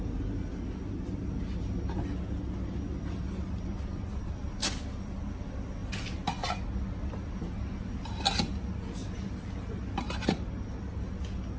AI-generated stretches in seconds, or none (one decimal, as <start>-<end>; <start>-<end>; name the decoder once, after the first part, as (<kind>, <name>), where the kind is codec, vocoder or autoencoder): none